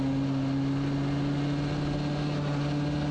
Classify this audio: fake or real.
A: real